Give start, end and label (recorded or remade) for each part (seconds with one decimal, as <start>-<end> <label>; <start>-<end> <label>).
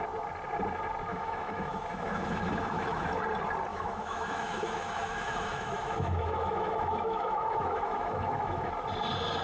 0.0-1.1 recorded; 1.1-3.1 remade; 3.1-3.7 recorded; 3.7-8.7 remade; 8.7-9.4 recorded